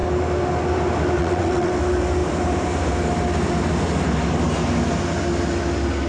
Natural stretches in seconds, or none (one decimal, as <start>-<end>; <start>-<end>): 0.0-1.2; 1.7-6.1